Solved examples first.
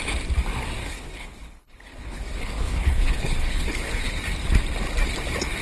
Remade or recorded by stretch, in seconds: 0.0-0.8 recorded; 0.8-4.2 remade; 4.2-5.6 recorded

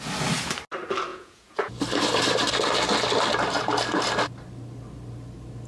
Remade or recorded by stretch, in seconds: 0.0-1.1 recorded; 1.1-1.7 remade; 1.7-5.7 recorded

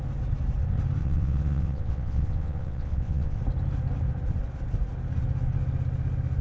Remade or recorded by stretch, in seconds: 0.0-1.0 recorded; 1.0-3.4 remade; 3.4-6.4 recorded